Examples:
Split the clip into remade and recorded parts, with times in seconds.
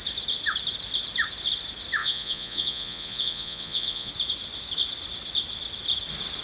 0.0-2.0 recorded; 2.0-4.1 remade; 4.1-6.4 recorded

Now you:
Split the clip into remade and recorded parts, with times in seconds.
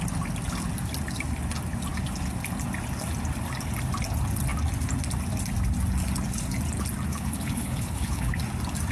0.0-7.1 recorded; 7.1-8.3 remade; 8.3-8.9 recorded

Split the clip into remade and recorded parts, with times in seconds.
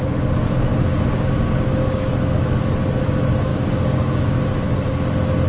0.0-0.7 recorded; 0.7-2.6 remade; 2.6-3.5 recorded; 3.5-4.5 remade; 4.5-5.5 recorded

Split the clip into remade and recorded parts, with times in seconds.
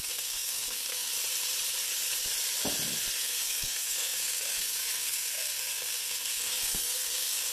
0.0-1.1 remade; 1.1-3.2 recorded; 3.2-7.5 remade